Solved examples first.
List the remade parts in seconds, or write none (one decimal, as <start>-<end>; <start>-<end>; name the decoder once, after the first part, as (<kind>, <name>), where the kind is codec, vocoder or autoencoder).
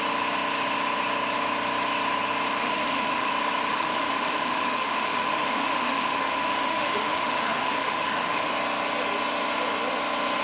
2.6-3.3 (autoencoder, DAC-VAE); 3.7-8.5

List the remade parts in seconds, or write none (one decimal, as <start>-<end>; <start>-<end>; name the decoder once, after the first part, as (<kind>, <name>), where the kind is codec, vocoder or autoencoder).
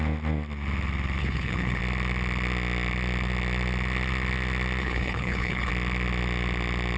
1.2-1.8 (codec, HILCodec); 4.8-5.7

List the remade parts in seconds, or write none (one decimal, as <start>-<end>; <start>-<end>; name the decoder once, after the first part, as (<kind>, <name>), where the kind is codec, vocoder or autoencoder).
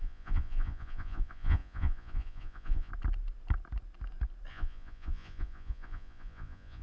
0.0-2.9 (vocoder, Vocos); 4.5-6.8